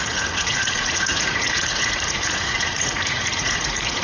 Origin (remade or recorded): remade